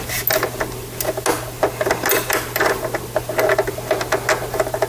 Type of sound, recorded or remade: recorded